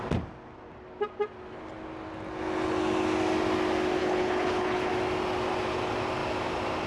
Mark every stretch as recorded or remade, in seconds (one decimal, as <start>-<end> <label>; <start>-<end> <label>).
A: 0.0-4.0 recorded; 4.0-4.9 remade; 4.9-6.9 recorded